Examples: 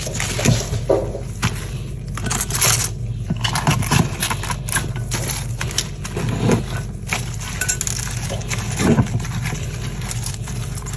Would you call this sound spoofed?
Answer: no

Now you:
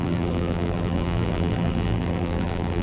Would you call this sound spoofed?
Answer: yes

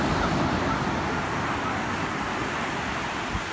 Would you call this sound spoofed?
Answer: no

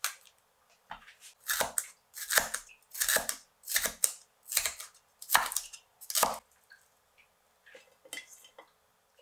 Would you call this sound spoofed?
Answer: no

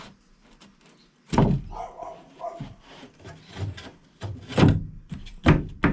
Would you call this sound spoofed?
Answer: no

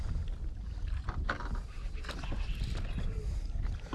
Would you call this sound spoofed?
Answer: no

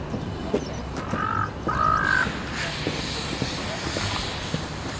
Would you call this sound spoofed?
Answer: no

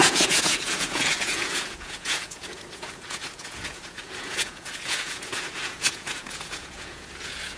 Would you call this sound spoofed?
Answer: yes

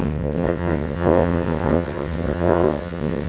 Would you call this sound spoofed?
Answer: yes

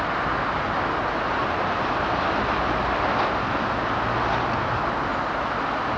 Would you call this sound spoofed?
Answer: no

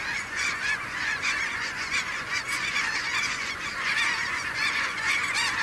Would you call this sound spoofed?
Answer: yes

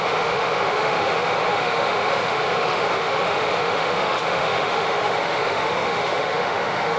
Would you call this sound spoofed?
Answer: yes